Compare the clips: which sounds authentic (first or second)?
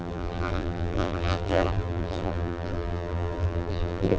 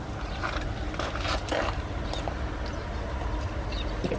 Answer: second